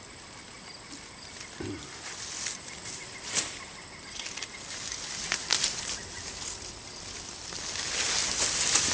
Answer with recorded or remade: recorded